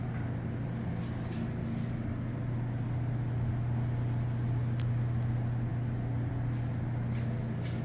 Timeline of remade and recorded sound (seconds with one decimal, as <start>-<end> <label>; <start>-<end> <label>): 0.0-7.8 recorded